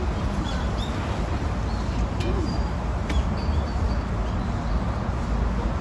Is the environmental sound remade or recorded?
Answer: recorded